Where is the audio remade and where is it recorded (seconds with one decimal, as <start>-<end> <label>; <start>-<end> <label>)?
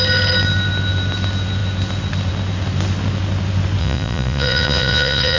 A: 0.0-3.8 recorded; 3.8-5.4 remade